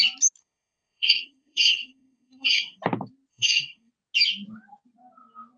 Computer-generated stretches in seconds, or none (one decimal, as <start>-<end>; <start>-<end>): 0.4-2.8; 3.3-3.9